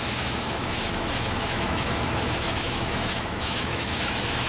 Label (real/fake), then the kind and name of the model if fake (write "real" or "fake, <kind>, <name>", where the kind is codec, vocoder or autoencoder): fake, autoencoder, DAC-VAE